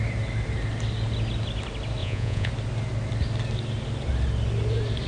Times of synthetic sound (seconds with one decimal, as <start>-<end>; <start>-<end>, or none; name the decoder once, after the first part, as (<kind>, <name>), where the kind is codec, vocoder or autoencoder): 2.0-2.5 (vocoder, Vocos)